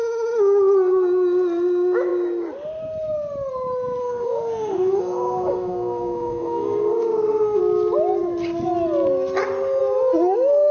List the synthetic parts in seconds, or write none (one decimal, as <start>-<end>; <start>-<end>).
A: 4.0-7.6